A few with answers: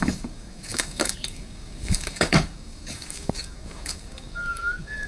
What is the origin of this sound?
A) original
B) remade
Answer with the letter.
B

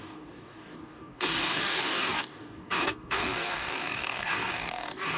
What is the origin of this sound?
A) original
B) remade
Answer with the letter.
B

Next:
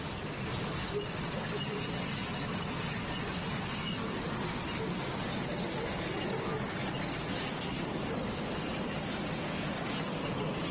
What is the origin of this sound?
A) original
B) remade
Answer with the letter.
A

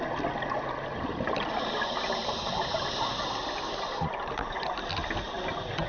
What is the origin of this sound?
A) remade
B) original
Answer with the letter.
B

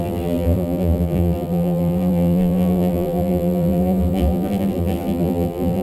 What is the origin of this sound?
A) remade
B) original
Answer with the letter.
A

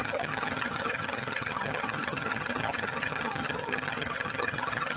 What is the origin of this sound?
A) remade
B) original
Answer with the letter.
A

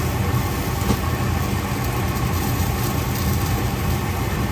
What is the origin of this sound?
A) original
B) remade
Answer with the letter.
A